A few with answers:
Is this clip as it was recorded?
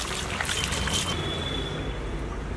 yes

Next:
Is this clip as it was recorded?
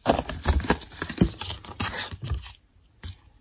no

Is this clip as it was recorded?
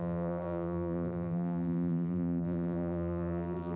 no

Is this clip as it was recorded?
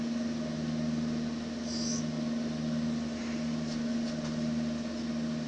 yes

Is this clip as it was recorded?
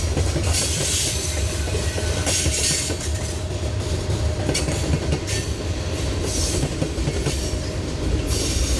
no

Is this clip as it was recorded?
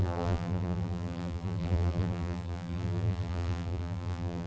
no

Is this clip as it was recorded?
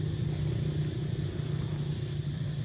yes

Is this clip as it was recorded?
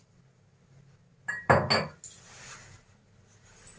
yes